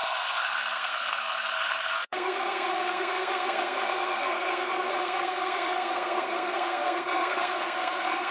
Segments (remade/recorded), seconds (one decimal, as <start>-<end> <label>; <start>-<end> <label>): 0.0-8.3 remade

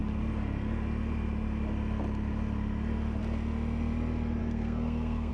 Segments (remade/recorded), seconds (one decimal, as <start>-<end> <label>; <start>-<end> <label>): 0.0-4.4 recorded; 4.4-5.3 remade

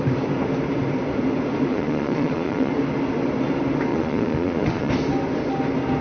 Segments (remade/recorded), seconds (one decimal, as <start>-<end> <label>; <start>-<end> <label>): 0.0-1.7 recorded; 1.7-2.7 remade; 2.7-3.9 recorded; 3.9-4.9 remade; 4.9-6.0 recorded

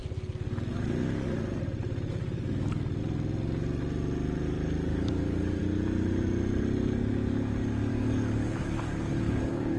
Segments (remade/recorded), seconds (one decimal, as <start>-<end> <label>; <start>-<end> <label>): 0.0-4.9 recorded; 4.9-5.6 remade; 5.6-7.9 recorded; 7.9-9.8 remade

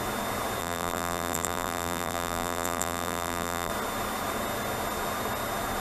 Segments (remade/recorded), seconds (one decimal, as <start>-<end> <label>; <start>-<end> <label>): 0.0-0.6 recorded; 0.6-3.7 remade; 3.7-5.8 recorded

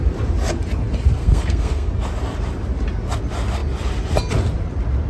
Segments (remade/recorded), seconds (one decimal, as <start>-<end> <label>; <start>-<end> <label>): 0.0-1.2 recorded; 1.2-1.9 remade; 1.9-5.1 recorded